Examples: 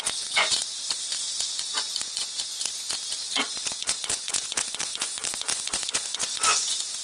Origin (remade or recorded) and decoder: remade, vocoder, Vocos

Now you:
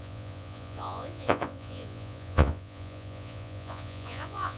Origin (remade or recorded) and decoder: remade, vocoder, Vocos